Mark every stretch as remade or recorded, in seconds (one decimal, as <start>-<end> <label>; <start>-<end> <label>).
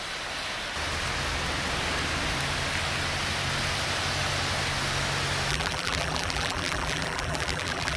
0.0-5.5 recorded; 5.5-8.0 remade